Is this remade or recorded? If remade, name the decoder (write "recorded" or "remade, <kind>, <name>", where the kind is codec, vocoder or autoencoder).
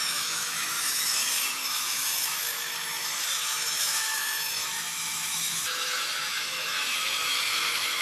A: remade, autoencoder, DAC-VAE